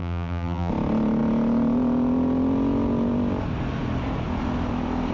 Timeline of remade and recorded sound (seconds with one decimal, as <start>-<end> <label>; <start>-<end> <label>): 0.0-0.7 remade; 0.7-5.1 recorded